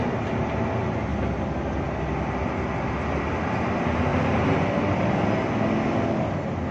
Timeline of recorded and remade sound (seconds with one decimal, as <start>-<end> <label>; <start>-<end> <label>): 0.0-4.1 recorded; 4.1-4.7 remade; 4.7-6.7 recorded

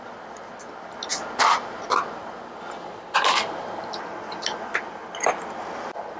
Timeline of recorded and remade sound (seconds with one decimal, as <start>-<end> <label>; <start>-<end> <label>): 0.0-6.2 recorded

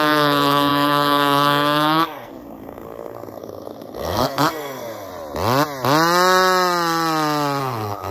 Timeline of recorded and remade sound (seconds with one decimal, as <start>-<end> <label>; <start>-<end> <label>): 0.0-5.1 remade; 5.1-7.6 recorded; 7.6-8.1 remade

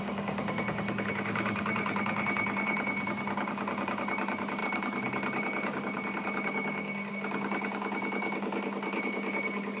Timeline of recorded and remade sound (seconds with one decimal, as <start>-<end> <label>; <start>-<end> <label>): 0.0-9.8 remade

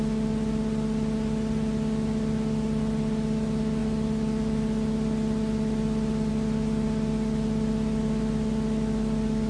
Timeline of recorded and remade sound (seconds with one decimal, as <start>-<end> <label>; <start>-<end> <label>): 0.0-9.5 recorded